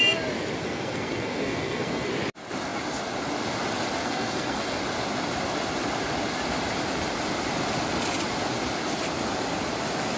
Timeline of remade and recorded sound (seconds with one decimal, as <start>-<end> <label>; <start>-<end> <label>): 0.0-0.6 recorded; 0.6-2.1 remade; 2.1-4.0 recorded; 4.0-4.8 remade; 4.8-10.2 recorded